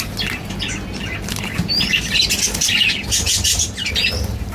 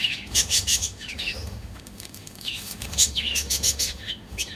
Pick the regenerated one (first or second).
second